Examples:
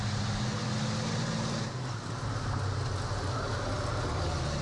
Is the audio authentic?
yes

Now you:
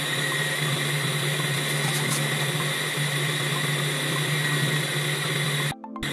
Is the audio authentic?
yes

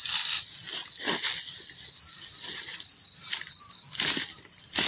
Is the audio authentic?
yes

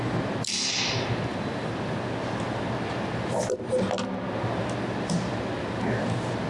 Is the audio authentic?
yes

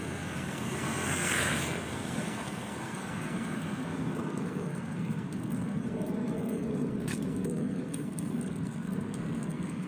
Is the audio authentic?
no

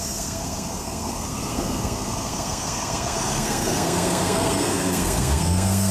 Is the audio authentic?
no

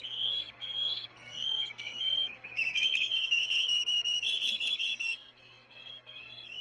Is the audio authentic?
no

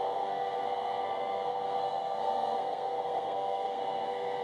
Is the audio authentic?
no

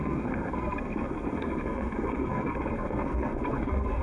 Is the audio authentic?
no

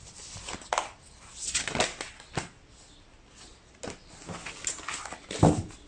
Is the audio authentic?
yes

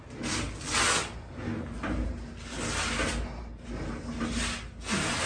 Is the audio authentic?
yes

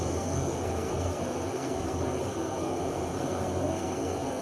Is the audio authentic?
no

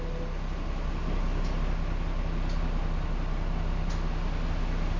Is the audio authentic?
yes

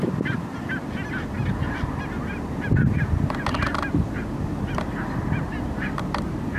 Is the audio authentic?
yes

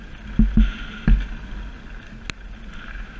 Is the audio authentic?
yes